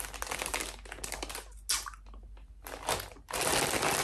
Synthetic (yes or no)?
no